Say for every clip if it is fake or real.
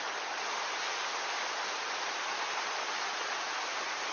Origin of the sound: real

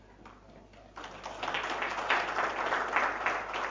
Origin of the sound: real